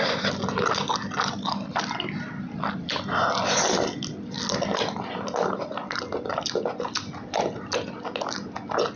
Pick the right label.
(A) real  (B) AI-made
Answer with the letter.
A